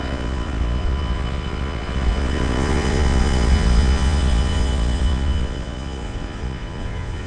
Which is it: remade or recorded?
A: remade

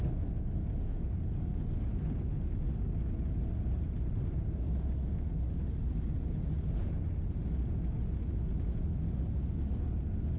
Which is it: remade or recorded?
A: recorded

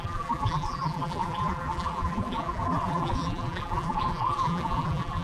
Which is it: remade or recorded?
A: remade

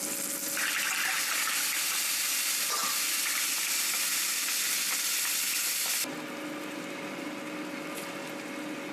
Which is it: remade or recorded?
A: recorded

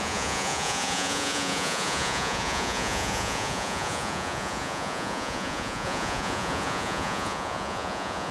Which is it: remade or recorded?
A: remade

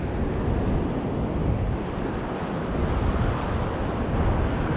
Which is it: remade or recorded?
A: recorded